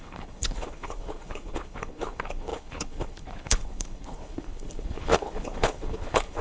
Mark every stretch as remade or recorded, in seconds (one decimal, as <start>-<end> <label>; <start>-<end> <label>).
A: 0.0-6.4 remade